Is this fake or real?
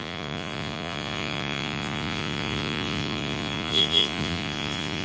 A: fake